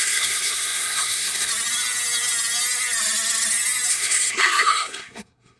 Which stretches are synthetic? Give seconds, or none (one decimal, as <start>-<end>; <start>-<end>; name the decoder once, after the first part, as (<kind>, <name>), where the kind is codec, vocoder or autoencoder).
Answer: 0.0-1.5 (codec, SNAC); 3.9-5.6